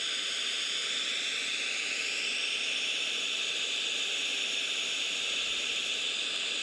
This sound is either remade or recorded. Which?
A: recorded